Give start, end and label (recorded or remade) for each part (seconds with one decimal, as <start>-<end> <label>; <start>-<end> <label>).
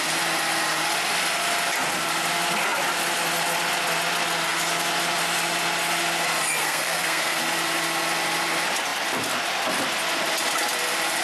0.0-6.6 recorded; 6.6-7.4 remade; 7.4-11.2 recorded